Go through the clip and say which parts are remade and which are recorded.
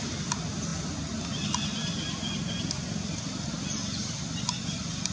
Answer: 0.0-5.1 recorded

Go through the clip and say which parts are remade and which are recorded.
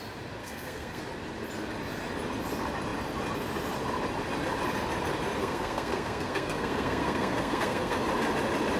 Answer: 0.0-0.4 recorded; 0.4-1.0 remade; 1.0-5.4 recorded; 5.4-8.0 remade; 8.0-8.8 recorded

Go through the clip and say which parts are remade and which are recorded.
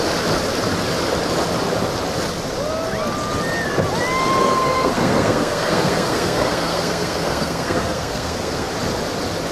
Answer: 0.0-4.4 recorded; 4.4-8.7 remade; 8.7-9.5 recorded